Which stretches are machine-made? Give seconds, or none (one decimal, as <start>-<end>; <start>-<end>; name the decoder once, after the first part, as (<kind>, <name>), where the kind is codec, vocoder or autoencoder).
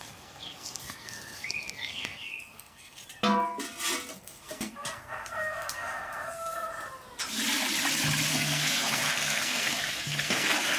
0.0-3.0 (codec, SNAC); 4.1-6.7; 8.3-10.8